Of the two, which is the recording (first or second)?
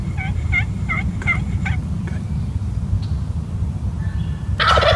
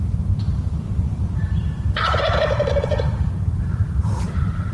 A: first